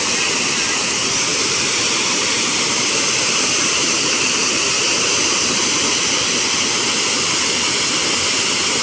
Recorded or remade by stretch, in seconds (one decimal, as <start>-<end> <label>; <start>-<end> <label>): 0.0-1.3 recorded; 1.3-5.6 remade; 5.6-8.8 recorded